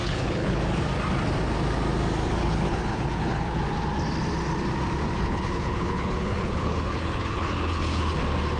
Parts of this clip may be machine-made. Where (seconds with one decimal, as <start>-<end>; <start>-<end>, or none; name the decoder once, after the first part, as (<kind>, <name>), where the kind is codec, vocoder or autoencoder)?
0.0-0.6 (codec, HILCodec); 2.4-3.6; 5.2-8.2